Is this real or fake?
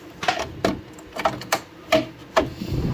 real